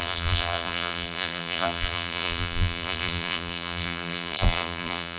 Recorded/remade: remade